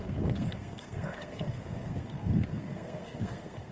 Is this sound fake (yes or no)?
yes